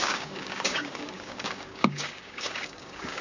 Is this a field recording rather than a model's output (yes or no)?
no